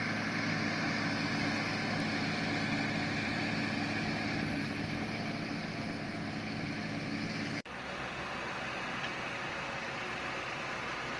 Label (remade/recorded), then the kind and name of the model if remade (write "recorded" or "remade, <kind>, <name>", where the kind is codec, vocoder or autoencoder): recorded